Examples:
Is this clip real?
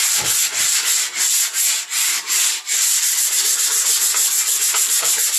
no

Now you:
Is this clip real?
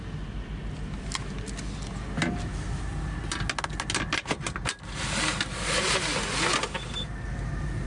yes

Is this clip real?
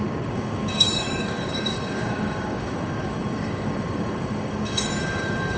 no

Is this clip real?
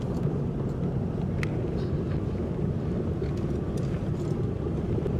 yes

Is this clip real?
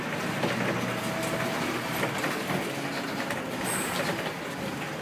yes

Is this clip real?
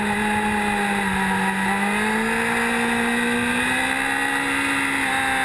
yes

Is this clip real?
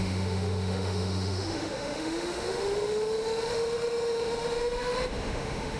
no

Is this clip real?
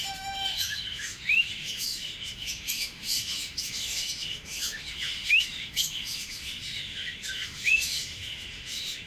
no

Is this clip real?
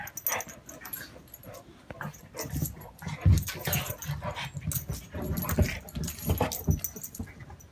yes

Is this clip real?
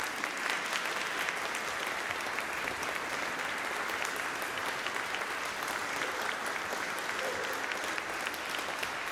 yes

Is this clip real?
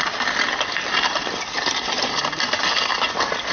yes